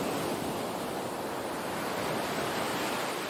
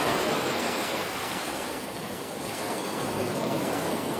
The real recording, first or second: first